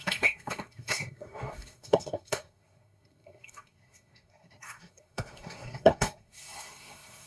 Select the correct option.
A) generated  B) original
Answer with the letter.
A